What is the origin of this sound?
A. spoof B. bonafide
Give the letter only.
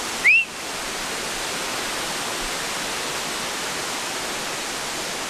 B